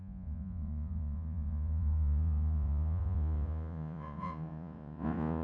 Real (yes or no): no